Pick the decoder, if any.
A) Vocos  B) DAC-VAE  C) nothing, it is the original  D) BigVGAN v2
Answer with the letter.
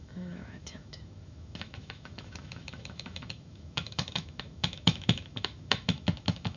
B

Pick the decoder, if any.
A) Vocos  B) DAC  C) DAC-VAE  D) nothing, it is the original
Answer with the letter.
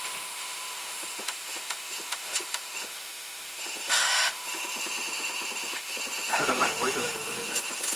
C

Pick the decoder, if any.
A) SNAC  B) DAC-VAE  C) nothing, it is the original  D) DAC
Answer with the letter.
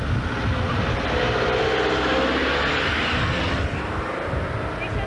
C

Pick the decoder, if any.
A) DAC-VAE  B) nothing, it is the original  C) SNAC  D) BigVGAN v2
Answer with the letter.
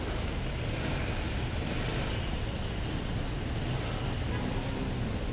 B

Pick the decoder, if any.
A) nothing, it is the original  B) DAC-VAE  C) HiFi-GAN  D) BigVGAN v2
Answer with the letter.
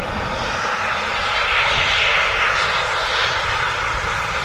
A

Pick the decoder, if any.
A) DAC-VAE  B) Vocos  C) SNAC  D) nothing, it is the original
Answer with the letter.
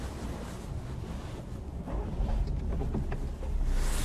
D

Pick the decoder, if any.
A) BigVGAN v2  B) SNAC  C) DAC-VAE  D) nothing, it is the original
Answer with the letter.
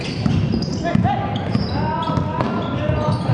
D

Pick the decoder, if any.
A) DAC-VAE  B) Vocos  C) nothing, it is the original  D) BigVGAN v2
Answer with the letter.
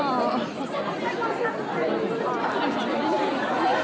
C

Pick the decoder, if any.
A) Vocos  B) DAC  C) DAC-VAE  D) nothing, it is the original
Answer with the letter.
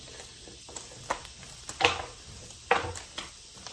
D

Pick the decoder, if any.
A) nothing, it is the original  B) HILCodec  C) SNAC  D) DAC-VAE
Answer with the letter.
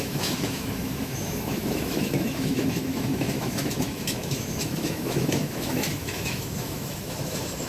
D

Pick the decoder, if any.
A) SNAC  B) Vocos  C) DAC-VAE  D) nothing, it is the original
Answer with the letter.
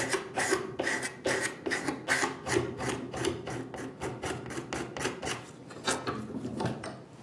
D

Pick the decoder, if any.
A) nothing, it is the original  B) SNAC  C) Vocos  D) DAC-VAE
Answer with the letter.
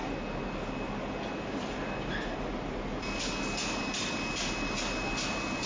A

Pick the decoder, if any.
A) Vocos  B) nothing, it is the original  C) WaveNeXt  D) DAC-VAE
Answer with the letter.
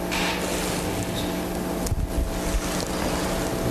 B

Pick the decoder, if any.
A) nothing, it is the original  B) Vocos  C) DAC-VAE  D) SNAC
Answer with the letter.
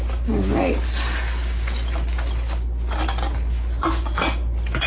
A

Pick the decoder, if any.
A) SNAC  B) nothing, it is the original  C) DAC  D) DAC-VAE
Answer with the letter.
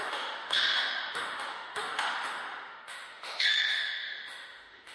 D